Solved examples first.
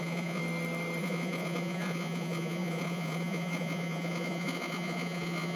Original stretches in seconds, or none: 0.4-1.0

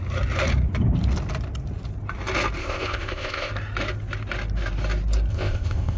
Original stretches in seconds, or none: 0.0-2.6; 3.5-5.3

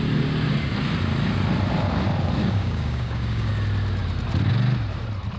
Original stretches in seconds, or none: 0.0-2.4; 3.5-5.4

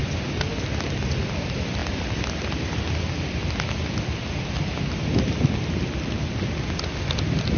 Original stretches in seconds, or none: 0.0-7.6

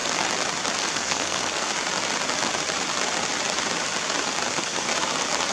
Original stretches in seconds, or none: 0.0-0.8; 1.7-4.5; 4.9-5.5

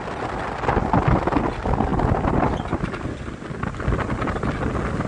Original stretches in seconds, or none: 0.0-5.1